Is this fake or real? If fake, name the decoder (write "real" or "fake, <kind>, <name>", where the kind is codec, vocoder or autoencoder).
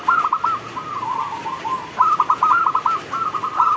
real